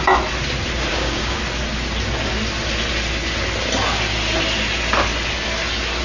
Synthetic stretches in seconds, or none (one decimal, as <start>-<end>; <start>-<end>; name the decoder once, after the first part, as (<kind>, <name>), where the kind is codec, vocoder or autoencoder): 0.9-1.4 (codec, DAC)